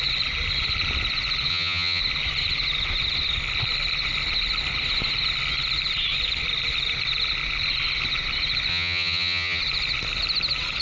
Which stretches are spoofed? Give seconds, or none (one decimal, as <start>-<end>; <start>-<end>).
1.5-2.0; 8.7-9.6